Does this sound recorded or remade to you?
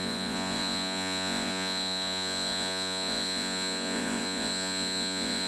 remade